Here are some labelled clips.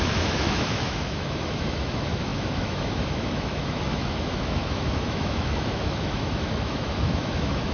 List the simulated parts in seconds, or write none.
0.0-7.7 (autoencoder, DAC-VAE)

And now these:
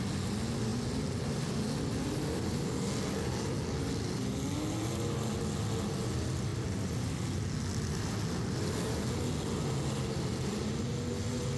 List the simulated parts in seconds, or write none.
none

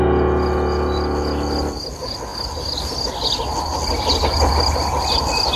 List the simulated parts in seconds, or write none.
none

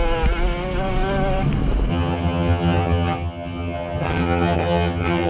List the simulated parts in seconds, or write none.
1.9-5.3 (vocoder, HiFi-GAN)

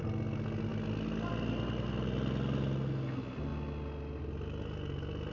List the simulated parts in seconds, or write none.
none

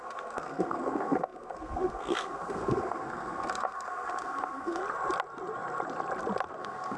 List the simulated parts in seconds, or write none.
0.0-4.8 (codec, SNAC); 6.6-7.0